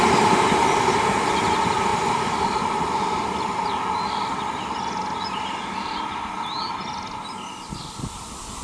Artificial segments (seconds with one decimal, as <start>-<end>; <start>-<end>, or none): none